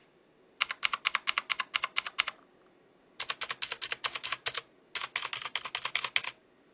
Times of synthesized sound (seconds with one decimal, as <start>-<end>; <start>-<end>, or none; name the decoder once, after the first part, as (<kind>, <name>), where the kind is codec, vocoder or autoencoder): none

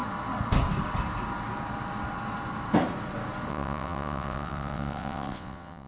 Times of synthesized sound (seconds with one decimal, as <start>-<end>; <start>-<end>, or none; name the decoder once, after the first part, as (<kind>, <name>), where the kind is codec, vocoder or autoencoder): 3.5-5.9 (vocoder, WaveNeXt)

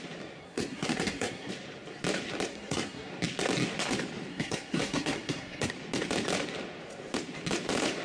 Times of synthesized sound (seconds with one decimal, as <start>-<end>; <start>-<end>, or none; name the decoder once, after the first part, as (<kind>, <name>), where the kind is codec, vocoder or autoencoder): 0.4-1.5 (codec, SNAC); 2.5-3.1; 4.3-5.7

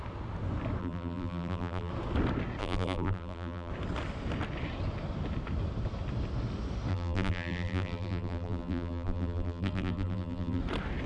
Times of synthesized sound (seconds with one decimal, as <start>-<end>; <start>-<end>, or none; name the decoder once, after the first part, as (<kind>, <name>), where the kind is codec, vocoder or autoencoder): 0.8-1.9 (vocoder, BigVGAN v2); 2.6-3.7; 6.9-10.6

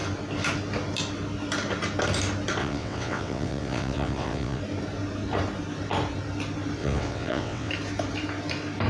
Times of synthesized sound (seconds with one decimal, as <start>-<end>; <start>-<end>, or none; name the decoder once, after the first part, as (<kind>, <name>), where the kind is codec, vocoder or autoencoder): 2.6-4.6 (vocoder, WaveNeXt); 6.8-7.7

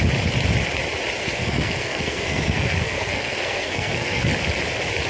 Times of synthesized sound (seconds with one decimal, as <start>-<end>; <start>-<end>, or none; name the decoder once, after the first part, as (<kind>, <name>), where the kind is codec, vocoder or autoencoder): 1.2-4.3 (codec, SNAC)

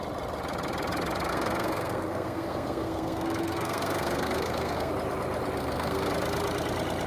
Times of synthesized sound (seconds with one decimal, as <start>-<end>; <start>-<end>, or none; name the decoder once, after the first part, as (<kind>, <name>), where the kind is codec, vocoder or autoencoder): 1.3-4.9 (codec, SNAC); 5.6-6.1

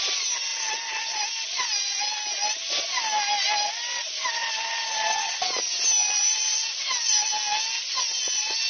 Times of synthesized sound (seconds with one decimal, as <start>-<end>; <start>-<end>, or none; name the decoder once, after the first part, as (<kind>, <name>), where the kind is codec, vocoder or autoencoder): 0.5-1.0 (vocoder, BigVGAN v2); 6.5-7.3